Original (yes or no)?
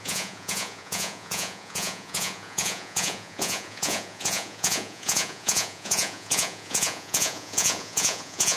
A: no